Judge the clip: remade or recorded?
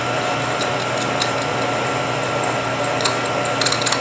recorded